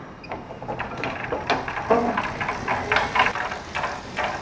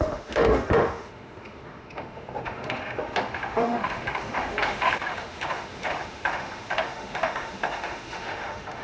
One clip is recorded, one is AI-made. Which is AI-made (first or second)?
second